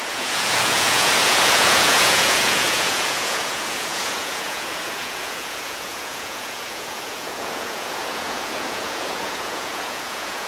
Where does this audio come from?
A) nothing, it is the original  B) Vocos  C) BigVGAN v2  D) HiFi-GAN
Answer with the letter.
B